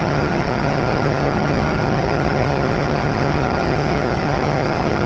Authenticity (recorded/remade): remade